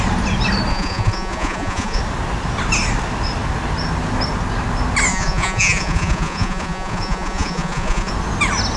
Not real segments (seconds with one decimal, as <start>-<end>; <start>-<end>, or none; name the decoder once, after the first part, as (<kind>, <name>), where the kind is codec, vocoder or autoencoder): 0.7-2.0 (vocoder, Vocos); 5.1-8.1